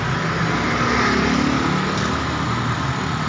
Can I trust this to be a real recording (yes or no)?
yes